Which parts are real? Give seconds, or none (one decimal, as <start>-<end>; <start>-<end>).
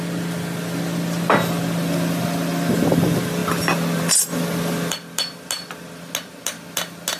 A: 0.0-7.2